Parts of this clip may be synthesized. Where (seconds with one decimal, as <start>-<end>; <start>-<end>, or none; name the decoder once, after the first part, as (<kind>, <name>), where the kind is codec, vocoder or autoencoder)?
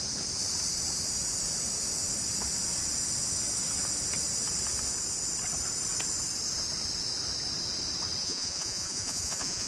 8.2-9.7 (vocoder, Vocos)